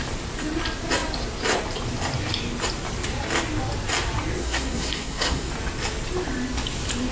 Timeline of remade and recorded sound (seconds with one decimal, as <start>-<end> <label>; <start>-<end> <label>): 0.0-4.4 recorded; 4.4-5.5 remade; 5.5-7.1 recorded